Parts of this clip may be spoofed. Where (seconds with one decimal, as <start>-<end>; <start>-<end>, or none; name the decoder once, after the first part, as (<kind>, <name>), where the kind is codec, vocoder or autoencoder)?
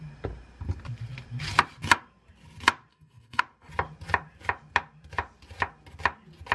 2.9-3.4 (codec, SNAC)